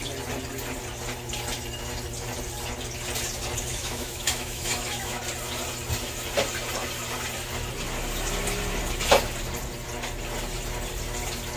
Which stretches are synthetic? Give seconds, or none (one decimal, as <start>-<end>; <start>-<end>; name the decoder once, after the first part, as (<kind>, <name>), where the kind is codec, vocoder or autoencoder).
3.7-5.2 (autoencoder, DAC-VAE)

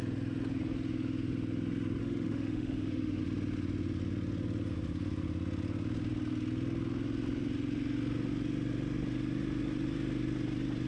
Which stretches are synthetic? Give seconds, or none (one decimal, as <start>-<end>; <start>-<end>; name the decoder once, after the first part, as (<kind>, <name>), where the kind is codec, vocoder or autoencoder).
2.0-3.2 (autoencoder, DAC-VAE)

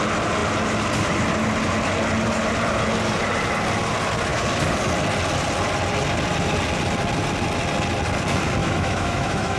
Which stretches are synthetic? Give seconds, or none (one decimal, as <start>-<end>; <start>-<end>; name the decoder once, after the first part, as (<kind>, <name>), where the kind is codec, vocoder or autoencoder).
8.6-9.6 (autoencoder, DAC-VAE)